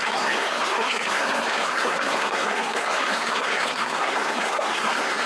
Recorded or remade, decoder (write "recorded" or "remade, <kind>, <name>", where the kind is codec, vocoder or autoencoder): remade, codec, SNAC